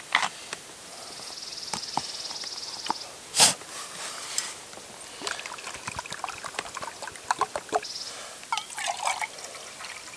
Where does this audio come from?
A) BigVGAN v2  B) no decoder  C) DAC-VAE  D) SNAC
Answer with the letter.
B